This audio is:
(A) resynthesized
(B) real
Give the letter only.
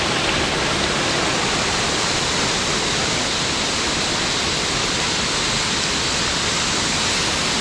B